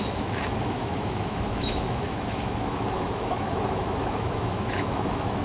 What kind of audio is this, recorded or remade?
remade